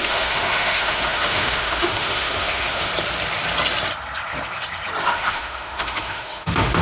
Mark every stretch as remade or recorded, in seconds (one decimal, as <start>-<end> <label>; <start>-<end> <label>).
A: 0.0-2.9 remade; 2.9-5.0 recorded; 5.0-6.8 remade